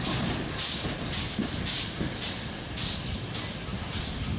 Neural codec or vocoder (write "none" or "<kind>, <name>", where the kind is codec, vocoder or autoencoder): none